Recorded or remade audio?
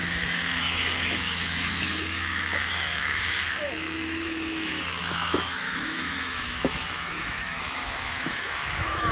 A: remade